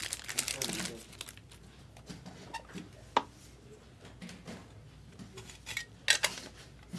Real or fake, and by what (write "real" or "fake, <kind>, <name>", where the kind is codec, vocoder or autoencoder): real